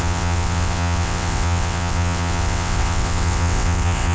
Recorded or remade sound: remade